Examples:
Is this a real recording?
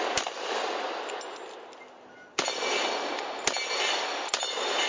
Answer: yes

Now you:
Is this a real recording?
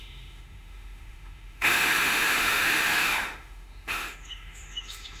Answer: no